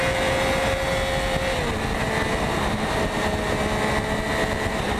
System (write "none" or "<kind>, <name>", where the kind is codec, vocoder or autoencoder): none